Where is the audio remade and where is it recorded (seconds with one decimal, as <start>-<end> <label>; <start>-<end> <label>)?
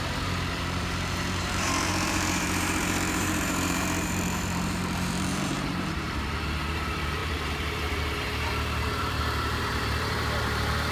0.0-10.9 remade